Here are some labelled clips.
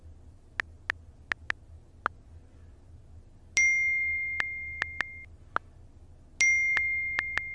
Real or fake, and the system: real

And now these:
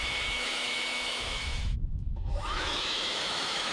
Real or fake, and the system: fake, autoencoder, DAC-VAE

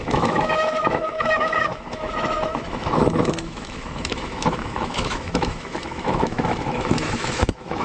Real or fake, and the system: fake, autoencoder, DAC-VAE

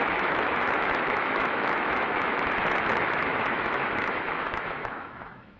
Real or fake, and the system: fake, autoencoder, DAC-VAE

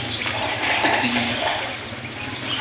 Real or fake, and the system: real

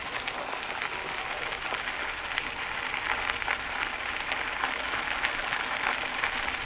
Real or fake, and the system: real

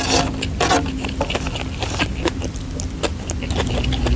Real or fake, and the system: real